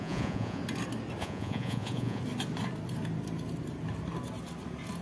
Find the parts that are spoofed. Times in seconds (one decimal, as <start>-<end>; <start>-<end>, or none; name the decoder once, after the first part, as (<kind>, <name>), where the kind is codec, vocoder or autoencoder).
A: 0.0-0.6 (vocoder, Vocos); 1.2-2.2